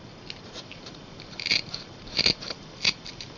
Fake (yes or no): no